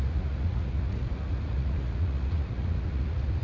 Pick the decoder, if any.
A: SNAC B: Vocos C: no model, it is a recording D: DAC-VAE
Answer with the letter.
B